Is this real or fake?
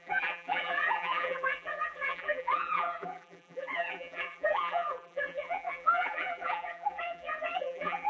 fake